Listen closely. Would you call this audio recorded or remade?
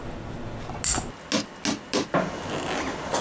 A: recorded